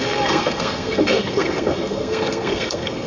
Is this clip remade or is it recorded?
remade